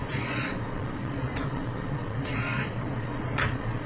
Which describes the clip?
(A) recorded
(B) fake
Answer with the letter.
B